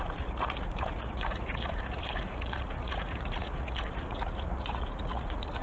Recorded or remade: remade